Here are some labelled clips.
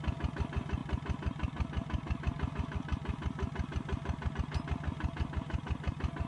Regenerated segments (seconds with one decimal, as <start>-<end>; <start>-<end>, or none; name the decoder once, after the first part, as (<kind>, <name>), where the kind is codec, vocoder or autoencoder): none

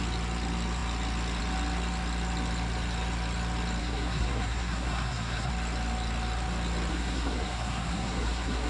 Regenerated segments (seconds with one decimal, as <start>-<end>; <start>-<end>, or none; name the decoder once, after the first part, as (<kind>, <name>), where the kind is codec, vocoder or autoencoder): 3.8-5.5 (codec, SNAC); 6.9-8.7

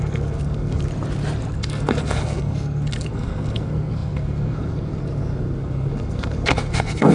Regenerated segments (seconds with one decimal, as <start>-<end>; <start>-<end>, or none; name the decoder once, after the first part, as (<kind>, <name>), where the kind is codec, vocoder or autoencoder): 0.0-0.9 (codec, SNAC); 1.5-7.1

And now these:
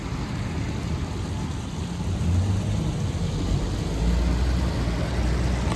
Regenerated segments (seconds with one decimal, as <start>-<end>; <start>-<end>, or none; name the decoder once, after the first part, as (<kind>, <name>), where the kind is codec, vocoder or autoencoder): none